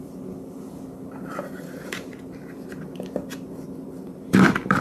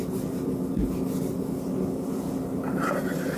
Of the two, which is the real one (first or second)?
second